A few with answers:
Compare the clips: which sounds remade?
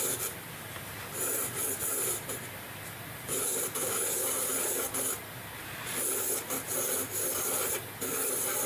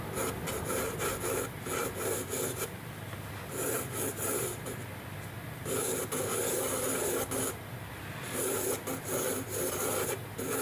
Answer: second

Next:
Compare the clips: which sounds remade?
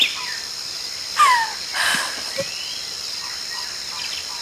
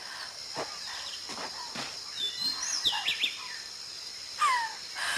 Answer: first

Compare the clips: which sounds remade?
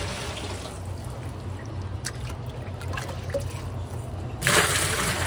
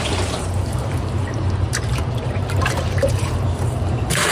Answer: second